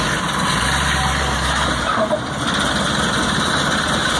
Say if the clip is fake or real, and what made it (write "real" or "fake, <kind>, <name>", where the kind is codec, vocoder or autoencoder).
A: real